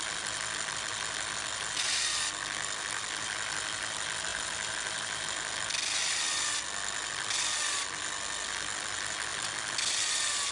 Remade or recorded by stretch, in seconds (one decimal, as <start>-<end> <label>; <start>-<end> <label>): 0.0-4.3 recorded; 4.3-5.5 remade; 5.5-10.5 recorded